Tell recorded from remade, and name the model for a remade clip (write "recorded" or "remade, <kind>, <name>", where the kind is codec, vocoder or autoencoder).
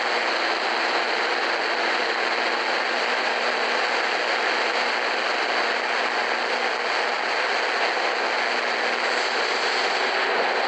recorded